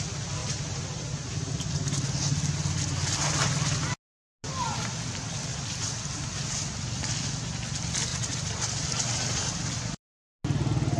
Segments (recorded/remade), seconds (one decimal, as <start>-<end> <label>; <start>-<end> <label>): 0.0-8.1 recorded; 8.1-8.9 remade; 8.9-11.0 recorded